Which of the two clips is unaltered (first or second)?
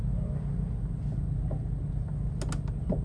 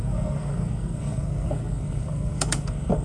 first